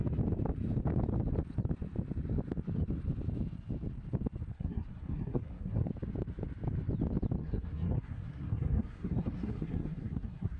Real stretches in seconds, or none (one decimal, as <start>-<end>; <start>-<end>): 0.0-4.5; 5.9-7.4